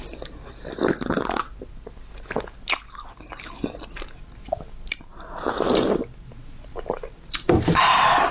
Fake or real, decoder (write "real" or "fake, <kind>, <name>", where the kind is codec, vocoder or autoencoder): real